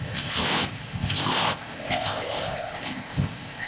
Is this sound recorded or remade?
remade